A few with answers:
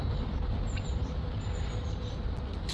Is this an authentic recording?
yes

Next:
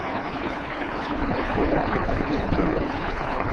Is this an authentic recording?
no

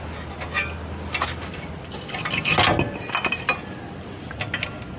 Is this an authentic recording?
yes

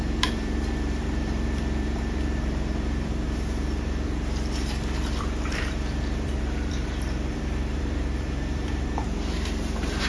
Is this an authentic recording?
no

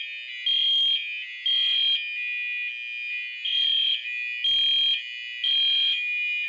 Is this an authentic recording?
yes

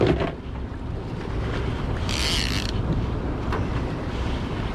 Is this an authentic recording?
yes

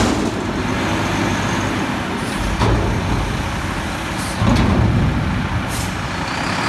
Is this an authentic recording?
yes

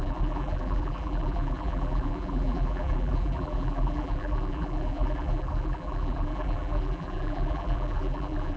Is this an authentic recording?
no